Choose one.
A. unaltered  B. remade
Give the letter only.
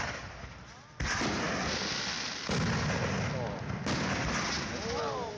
A